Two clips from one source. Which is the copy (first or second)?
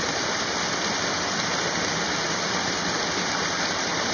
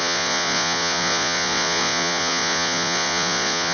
second